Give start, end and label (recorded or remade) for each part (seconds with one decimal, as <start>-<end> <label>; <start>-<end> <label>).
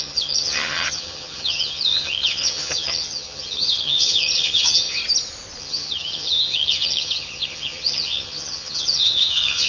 0.0-5.0 remade; 5.0-5.6 recorded; 5.6-9.7 remade